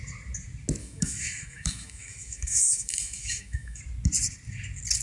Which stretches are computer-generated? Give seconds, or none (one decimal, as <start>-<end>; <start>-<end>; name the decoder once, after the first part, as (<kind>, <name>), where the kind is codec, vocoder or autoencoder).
0.8-3.8 (autoencoder, DAC-VAE)